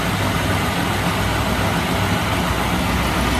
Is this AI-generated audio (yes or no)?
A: no